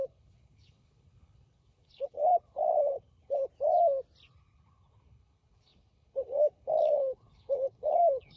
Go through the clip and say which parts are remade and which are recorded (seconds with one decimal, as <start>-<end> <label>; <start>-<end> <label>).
0.0-3.5 remade; 3.5-4.3 recorded; 4.3-8.4 remade